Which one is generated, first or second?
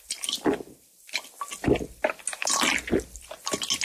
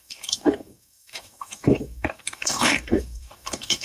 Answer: second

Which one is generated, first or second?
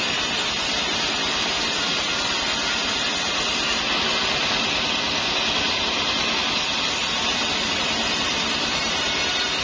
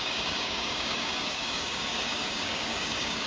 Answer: second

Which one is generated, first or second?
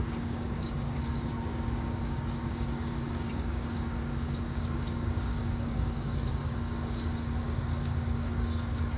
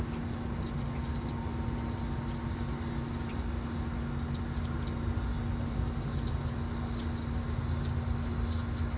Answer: first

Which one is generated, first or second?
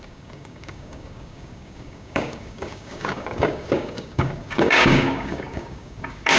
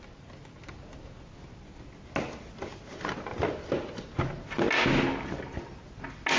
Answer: first